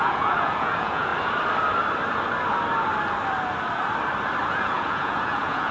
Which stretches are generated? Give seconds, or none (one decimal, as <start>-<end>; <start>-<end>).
0.0-1.1; 4.5-5.7